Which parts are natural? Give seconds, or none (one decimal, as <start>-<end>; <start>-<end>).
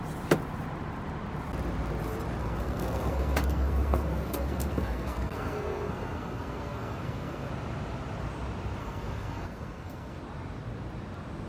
0.0-2.4; 7.5-8.8; 10.2-11.5